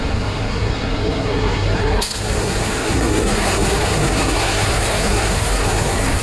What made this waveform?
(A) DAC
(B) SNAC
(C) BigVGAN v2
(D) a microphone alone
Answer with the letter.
B